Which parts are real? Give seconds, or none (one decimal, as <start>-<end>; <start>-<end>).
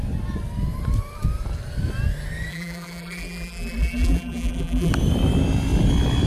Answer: 0.0-2.5; 4.9-6.3